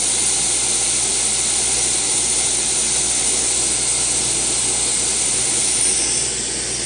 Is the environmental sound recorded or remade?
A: recorded